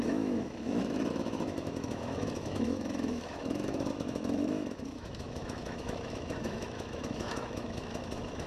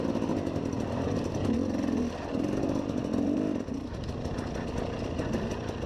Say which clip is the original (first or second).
second